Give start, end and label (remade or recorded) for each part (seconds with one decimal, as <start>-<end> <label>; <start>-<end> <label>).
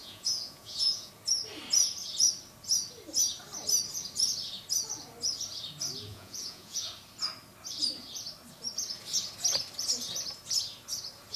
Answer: 0.0-1.1 remade; 1.1-6.1 recorded; 6.1-6.9 remade; 6.9-11.4 recorded